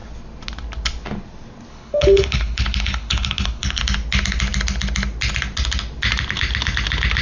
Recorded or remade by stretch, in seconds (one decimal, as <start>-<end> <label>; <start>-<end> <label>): 0.0-1.7 recorded; 1.7-3.8 remade; 3.8-7.2 recorded